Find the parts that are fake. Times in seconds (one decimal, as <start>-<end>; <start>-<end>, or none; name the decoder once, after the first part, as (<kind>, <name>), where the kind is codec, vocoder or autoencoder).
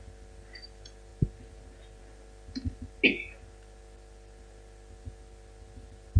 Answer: none